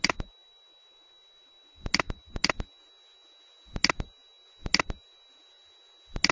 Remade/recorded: recorded